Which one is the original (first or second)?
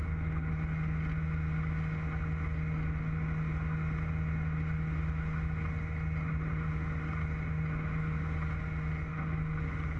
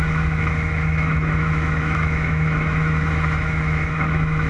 first